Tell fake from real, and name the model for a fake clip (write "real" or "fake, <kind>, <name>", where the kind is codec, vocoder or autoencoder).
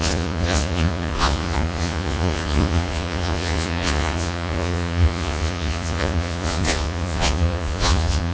fake, vocoder, Vocos